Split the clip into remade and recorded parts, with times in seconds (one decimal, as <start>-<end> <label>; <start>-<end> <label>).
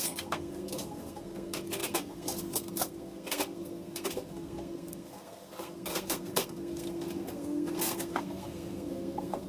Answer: 0.0-9.5 remade